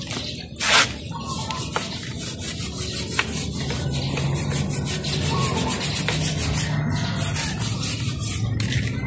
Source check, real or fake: real